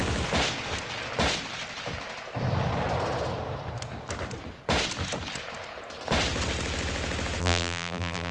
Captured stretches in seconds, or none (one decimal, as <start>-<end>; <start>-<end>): 0.0-7.4